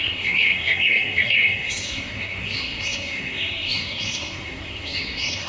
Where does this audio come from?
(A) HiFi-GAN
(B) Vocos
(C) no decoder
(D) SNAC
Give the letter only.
D